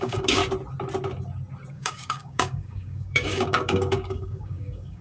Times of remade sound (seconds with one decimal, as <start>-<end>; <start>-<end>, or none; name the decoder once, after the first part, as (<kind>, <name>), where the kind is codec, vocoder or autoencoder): 0.0-0.4 (codec, DAC); 1.7-5.0